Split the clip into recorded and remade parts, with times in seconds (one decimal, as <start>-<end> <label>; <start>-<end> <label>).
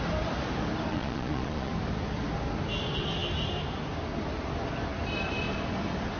0.0-0.9 recorded; 0.9-1.7 remade; 1.7-6.2 recorded